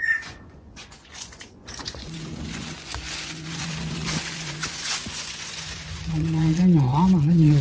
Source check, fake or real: fake